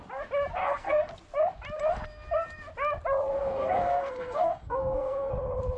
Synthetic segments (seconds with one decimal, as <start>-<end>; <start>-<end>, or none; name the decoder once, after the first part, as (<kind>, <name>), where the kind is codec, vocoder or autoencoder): 0.6-1.1 (codec, SNAC); 3.4-5.3